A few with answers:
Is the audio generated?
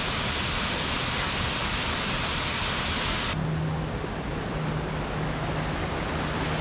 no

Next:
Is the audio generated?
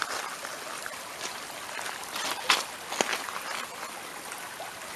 no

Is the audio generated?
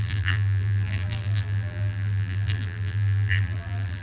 yes